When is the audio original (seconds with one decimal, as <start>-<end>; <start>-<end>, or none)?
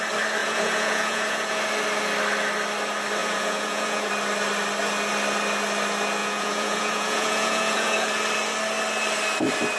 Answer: 0.0-0.4; 1.6-3.2; 4.1-6.2; 8.1-9.8